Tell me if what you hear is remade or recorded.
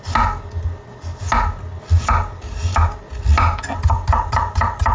recorded